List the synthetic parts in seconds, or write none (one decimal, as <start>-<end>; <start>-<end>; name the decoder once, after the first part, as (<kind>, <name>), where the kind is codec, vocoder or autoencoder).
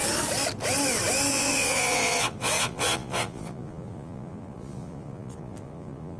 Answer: 1.3-6.2 (vocoder, Vocos)